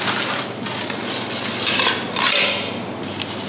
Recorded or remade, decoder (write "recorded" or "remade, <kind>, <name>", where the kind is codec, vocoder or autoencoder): recorded